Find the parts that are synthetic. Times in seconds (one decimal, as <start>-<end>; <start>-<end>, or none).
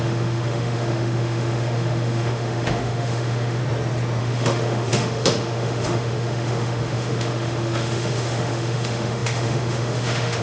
0.0-3.6; 4.2-10.4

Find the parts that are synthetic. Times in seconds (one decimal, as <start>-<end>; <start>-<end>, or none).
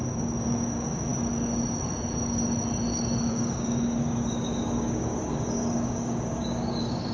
0.0-1.1; 3.3-7.1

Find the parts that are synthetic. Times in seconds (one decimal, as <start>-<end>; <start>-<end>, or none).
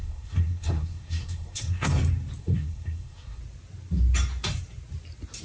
0.0-1.9; 2.4-3.4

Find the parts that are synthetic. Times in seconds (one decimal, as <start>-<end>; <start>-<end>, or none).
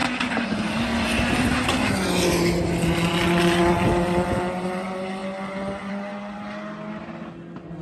none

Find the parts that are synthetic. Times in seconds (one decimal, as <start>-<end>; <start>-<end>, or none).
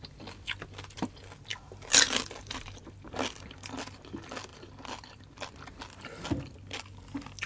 none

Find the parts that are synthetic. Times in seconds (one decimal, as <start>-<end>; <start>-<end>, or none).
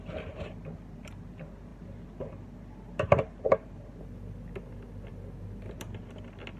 none